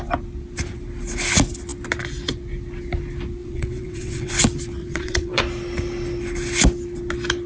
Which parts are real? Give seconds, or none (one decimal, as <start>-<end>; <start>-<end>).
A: 0.0-3.4; 4.3-4.8; 5.4-7.5